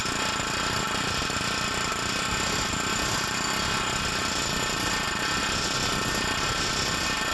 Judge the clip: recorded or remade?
recorded